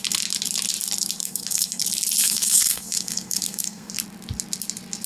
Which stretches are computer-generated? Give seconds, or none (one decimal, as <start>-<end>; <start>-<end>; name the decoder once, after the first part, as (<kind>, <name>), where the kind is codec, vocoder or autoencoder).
1.2-1.8 (codec, SNAC); 2.2-3.9